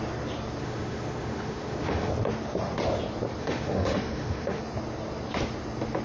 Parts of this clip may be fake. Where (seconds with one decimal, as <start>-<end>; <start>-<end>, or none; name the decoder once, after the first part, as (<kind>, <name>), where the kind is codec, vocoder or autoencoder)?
0.6-2.1 (autoencoder, DAC-VAE); 3.4-4.6